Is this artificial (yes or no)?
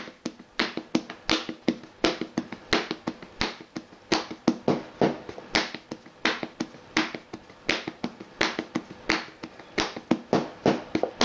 no